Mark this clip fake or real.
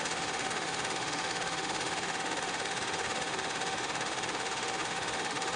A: fake